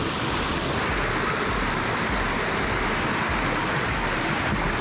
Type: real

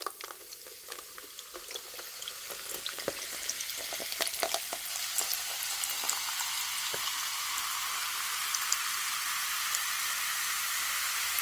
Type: real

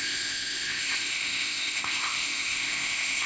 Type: fake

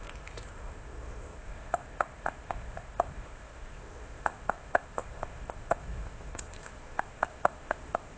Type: fake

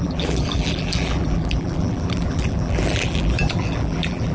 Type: fake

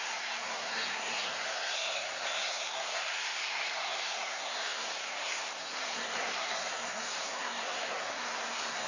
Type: fake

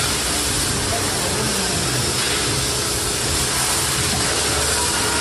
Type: real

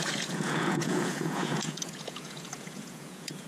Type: fake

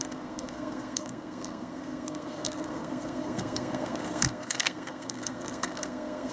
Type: fake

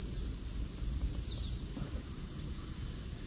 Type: real